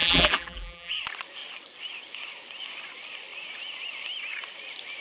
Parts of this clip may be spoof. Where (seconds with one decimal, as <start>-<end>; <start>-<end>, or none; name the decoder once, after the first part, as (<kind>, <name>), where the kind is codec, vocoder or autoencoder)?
0.0-0.9 (vocoder, BigVGAN v2)